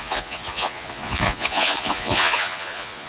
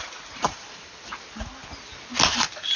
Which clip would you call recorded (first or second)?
second